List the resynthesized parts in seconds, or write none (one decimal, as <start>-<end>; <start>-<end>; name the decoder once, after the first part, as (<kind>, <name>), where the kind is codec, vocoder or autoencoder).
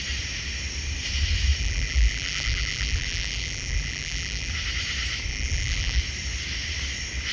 1.6-4.5 (vocoder, BigVGAN v2); 5.3-6.0